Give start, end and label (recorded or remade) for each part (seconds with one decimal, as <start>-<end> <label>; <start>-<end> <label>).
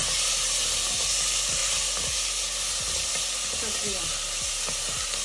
0.0-5.2 recorded